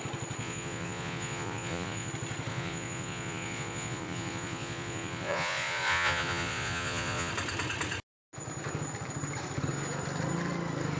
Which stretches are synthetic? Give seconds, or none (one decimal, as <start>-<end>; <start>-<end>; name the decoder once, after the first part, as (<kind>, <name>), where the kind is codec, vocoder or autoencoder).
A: 0.4-2.1 (vocoder, Vocos); 2.5-7.3